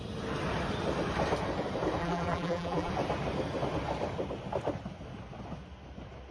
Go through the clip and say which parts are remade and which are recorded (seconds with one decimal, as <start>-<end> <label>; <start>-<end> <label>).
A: 0.0-2.0 recorded; 2.0-2.9 remade; 2.9-6.3 recorded